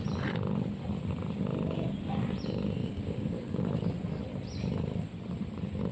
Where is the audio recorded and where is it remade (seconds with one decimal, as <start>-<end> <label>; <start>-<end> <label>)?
0.0-2.8 recorded; 2.8-3.6 remade; 3.6-5.9 recorded